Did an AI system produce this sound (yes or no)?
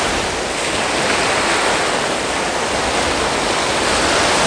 no